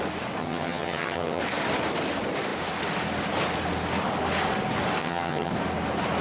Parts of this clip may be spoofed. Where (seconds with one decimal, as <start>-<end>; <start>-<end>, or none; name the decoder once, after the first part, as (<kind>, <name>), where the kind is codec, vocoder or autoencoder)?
0.4-1.4 (vocoder, HiFi-GAN); 5.0-5.5